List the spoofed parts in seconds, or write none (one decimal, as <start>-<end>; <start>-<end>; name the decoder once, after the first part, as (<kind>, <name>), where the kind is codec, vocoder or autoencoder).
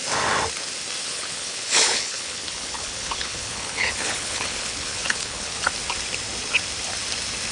1.0-5.5 (codec, HILCodec)